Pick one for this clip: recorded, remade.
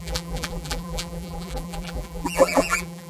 remade